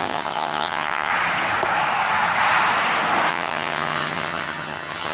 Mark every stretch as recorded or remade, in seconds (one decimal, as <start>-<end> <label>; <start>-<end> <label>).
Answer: 0.0-1.1 remade; 1.1-3.3 recorded; 3.3-5.1 remade